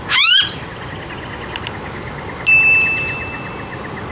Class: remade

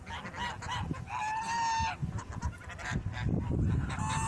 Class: recorded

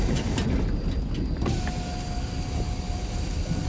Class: recorded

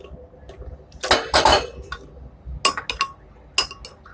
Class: recorded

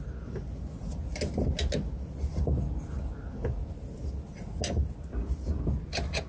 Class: recorded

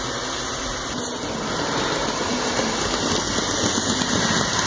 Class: recorded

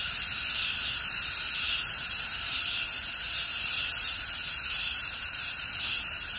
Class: remade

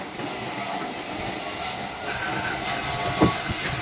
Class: recorded